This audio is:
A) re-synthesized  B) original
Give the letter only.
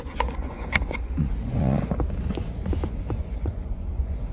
A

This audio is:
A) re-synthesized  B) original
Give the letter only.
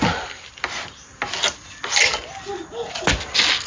B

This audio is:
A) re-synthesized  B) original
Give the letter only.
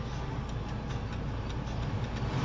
B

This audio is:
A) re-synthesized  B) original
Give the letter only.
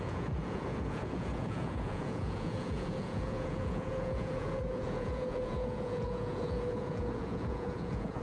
A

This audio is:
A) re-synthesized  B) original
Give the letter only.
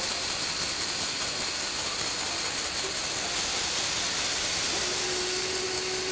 B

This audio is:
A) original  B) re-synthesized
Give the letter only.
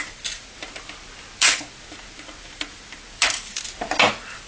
A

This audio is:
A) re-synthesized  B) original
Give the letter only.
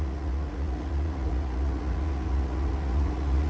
A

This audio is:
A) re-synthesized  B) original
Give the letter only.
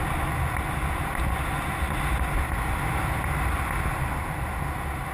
B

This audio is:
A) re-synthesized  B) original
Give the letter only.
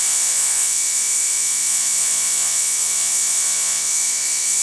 A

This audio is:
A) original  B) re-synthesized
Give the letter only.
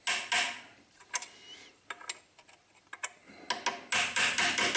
A